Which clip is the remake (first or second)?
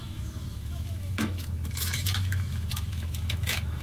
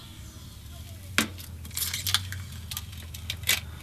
first